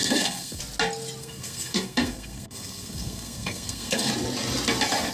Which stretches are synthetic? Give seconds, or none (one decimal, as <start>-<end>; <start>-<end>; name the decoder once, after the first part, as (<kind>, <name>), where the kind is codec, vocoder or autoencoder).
0.0-0.6 (codec, SNAC); 1.2-4.1